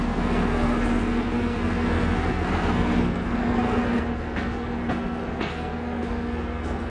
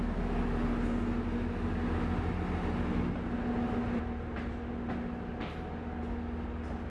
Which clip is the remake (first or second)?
first